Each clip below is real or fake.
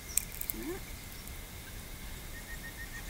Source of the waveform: real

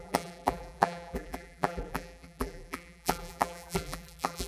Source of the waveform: fake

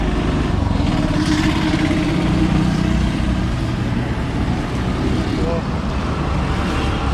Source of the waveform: real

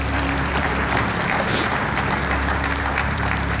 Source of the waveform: fake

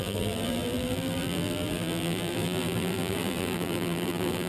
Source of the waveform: fake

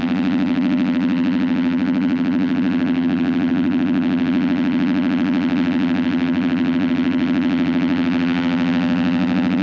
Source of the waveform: fake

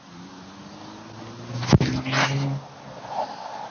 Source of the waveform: real